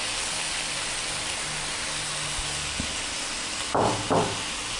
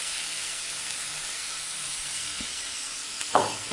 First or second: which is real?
first